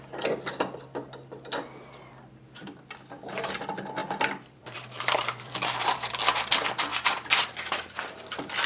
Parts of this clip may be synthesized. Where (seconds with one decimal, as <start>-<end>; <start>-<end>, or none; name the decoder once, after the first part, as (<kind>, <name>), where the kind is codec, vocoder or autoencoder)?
4.0-6.1 (vocoder, BigVGAN v2)